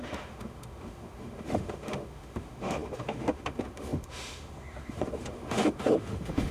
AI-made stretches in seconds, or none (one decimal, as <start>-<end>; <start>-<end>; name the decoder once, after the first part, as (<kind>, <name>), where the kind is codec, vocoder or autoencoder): 0.0-6.5 (autoencoder, DAC-VAE)